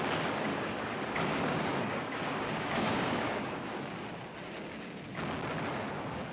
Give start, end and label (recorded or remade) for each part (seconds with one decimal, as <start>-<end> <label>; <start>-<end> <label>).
0.0-0.5 recorded; 0.5-4.0 remade; 4.0-4.4 recorded; 4.4-5.0 remade; 5.0-6.3 recorded